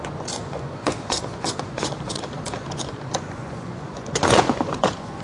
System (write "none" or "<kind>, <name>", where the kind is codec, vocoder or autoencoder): vocoder, Vocos